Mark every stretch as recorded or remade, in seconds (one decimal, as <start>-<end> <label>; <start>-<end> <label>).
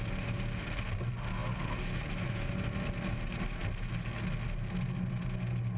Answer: 0.0-5.8 recorded